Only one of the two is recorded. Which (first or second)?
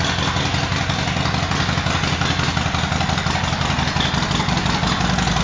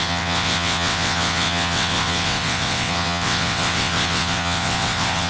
first